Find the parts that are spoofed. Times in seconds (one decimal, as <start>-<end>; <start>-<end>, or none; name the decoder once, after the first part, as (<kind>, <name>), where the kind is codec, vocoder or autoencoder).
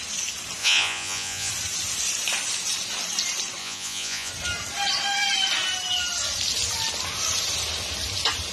0.6-1.5 (vocoder, Vocos); 3.6-4.3